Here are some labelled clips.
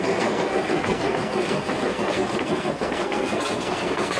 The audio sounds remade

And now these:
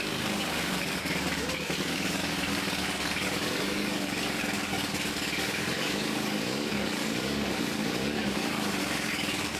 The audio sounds remade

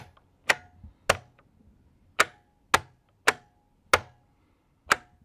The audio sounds recorded